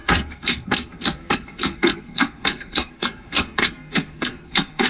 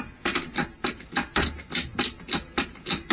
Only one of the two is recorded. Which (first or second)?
second